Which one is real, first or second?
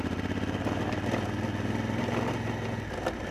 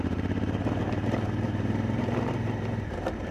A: first